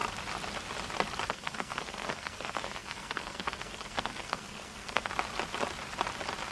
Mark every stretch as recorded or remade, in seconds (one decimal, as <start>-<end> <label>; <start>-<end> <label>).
0.0-1.3 recorded; 1.3-5.1 remade; 5.1-6.5 recorded